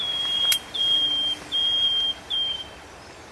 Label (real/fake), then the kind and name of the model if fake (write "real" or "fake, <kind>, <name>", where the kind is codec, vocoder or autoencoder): fake, vocoder, BigVGAN v2